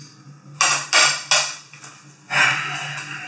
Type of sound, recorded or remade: recorded